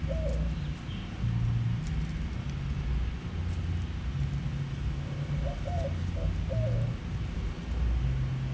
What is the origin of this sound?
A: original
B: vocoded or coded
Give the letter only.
A